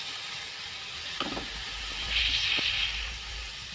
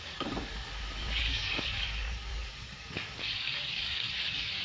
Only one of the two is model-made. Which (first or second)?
second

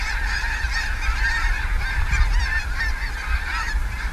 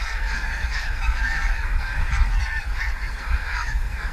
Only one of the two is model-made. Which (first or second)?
second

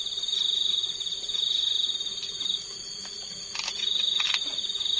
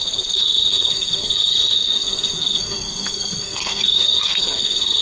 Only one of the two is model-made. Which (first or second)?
second